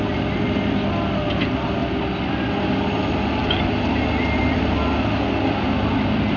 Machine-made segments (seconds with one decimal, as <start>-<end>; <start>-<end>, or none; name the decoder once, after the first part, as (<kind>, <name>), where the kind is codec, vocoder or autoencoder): none